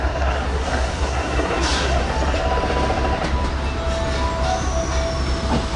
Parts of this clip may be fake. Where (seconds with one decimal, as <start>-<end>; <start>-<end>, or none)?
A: 0.0-2.0